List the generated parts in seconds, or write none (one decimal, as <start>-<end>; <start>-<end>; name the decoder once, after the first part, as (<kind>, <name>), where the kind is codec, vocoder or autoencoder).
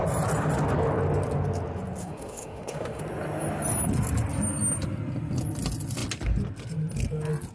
2.0-3.0 (autoencoder, DAC-VAE)